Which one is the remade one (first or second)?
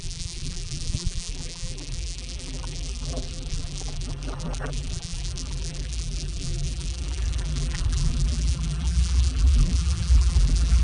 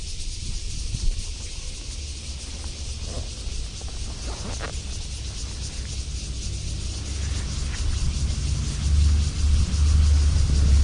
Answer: first